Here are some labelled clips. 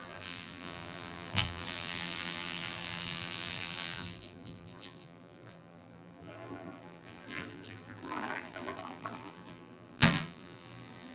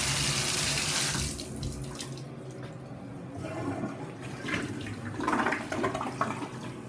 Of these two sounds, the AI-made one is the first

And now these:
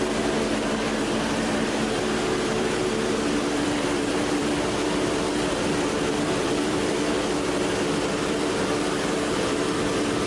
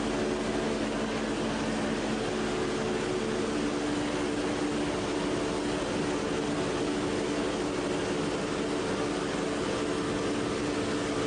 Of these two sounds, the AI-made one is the first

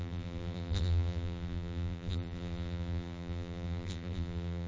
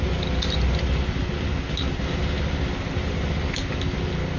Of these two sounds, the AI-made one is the first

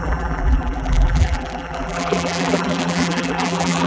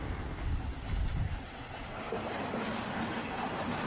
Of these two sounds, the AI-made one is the first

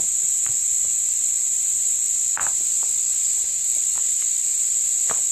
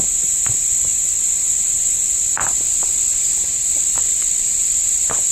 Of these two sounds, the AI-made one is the second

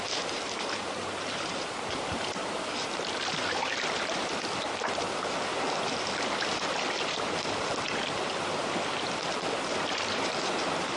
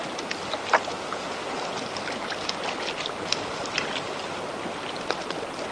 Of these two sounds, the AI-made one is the first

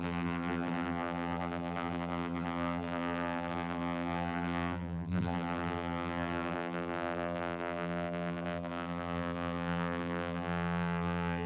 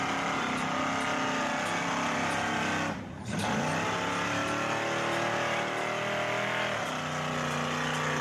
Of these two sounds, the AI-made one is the first